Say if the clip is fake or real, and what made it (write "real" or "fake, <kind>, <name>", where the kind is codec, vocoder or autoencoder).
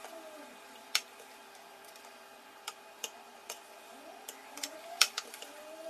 fake, vocoder, BigVGAN v2